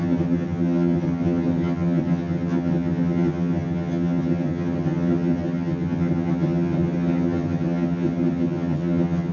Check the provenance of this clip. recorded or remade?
remade